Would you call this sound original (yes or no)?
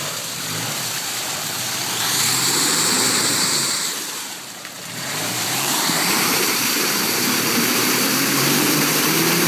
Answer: no